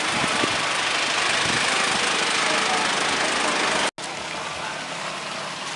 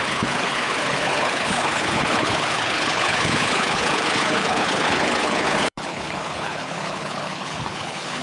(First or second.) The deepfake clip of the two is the second